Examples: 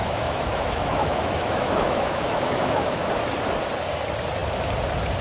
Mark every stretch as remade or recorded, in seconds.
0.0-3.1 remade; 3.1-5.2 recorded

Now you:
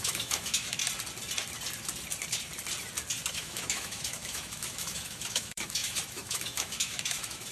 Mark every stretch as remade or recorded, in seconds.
0.0-0.8 remade; 0.8-3.3 recorded; 3.3-7.5 remade

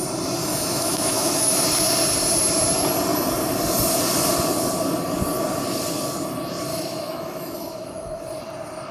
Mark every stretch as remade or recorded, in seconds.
0.0-0.4 recorded; 0.4-1.6 remade; 1.6-6.7 recorded; 6.7-8.2 remade; 8.2-8.9 recorded

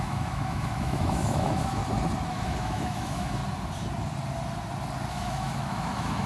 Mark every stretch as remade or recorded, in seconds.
0.0-1.8 remade; 1.8-2.3 recorded; 2.3-3.4 remade; 3.4-5.1 recorded; 5.1-6.3 remade

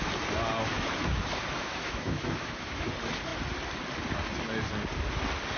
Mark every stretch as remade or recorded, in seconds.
0.0-0.7 recorded; 0.7-2.9 remade; 2.9-5.6 recorded

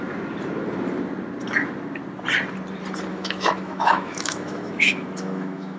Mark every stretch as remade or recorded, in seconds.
0.0-3.1 recorded; 3.1-5.8 remade

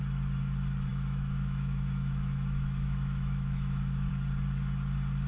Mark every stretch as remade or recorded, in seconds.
0.0-0.9 recorded; 0.9-4.1 remade; 4.1-5.3 recorded